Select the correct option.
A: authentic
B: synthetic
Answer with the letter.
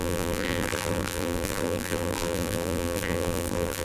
B